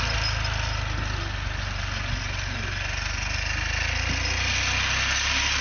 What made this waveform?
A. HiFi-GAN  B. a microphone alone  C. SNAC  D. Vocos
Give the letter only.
B